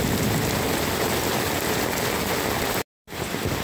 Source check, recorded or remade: recorded